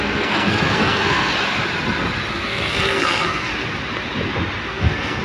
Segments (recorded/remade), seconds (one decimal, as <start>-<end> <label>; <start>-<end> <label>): 0.0-1.3 remade; 1.3-2.3 recorded; 2.3-3.5 remade; 3.5-4.6 recorded; 4.6-5.2 remade